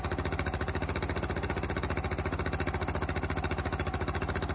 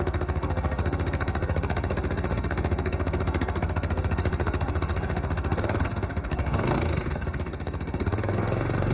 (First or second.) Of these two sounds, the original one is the first